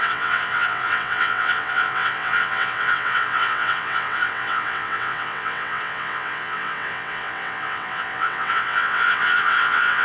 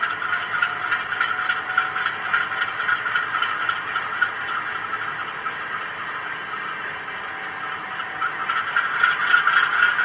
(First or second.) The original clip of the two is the second